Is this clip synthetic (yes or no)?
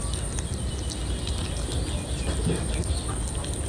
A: no